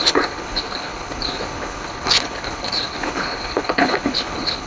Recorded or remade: remade